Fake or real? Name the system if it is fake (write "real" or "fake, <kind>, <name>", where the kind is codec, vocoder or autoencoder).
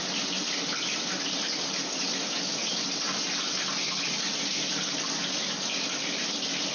real